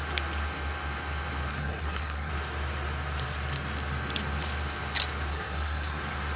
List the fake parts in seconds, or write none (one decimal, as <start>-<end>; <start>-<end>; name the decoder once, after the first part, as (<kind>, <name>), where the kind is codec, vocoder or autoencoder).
1.5-2.3 (codec, SNAC); 5.3-6.0